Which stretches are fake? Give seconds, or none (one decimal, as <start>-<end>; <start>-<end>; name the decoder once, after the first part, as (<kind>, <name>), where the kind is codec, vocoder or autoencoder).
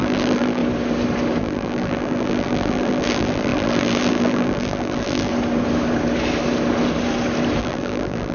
0.0-0.6 (vocoder, BigVGAN v2); 1.4-5.3; 7.6-8.3